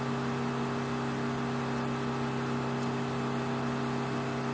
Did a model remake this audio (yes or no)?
no